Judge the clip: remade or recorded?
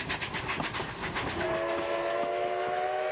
recorded